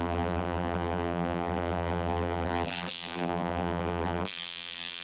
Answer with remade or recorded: remade